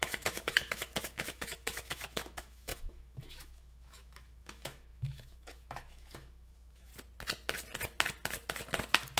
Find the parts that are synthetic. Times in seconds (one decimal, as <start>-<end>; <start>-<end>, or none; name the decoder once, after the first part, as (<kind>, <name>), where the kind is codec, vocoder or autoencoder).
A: 0.0-6.9 (autoencoder, DAC-VAE)